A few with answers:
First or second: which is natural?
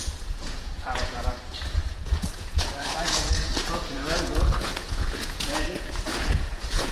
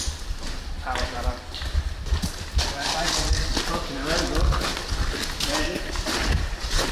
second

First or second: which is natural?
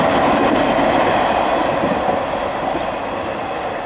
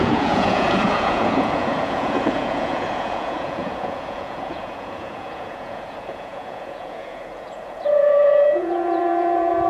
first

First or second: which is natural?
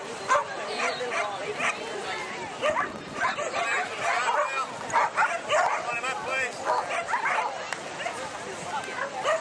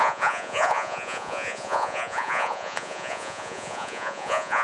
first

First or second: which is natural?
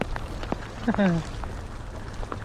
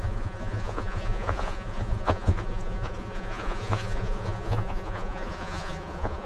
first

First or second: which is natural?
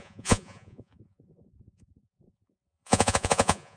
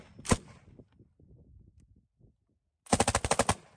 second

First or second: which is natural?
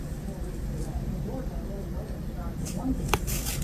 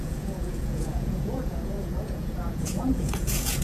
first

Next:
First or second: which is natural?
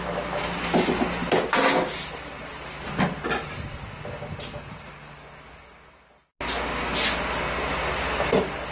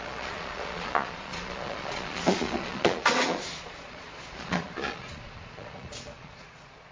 first